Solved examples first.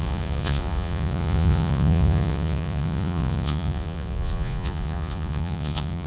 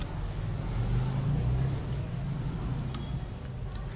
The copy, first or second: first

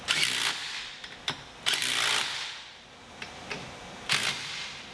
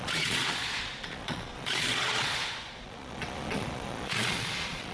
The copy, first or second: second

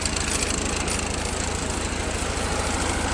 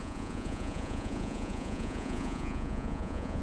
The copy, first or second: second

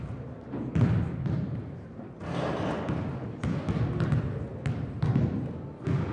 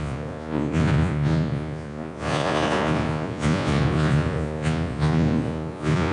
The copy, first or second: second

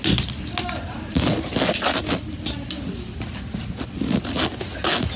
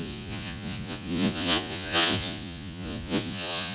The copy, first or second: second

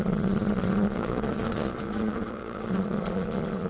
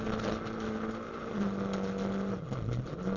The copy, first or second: first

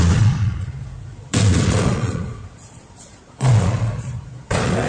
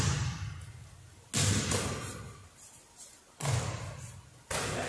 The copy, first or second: first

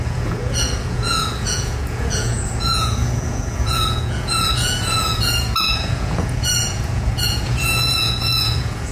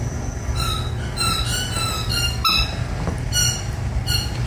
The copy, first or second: first